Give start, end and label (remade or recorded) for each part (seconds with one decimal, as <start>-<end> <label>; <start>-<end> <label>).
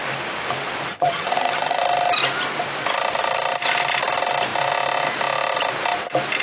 0.0-0.9 recorded; 0.9-1.8 remade; 1.8-6.4 recorded